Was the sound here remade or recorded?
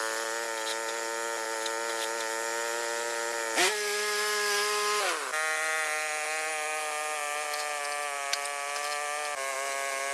recorded